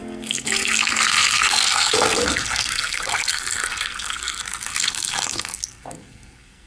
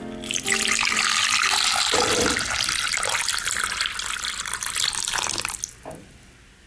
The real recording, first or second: second